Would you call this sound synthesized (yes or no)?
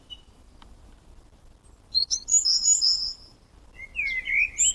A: no